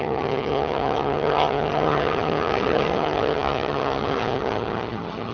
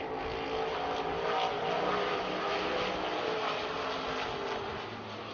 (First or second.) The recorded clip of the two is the second